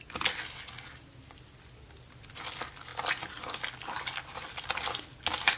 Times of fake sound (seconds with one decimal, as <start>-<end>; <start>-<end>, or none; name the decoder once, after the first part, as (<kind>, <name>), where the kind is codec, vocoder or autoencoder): none